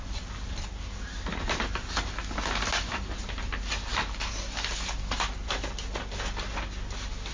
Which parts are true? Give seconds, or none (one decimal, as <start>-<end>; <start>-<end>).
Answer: 0.0-7.3